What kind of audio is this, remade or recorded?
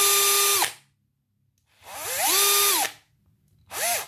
recorded